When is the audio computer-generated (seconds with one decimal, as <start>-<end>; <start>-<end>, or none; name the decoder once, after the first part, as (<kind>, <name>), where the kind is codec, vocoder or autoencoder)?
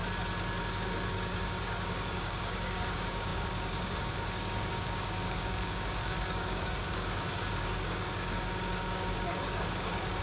0.6-10.2 (codec, DAC)